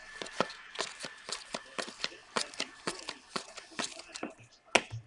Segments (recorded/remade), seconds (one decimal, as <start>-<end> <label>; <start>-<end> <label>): 0.0-5.1 recorded